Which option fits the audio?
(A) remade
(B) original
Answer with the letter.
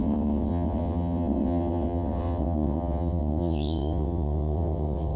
A